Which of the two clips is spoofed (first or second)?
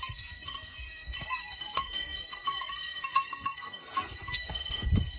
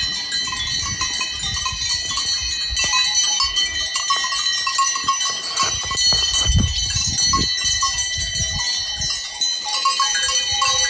first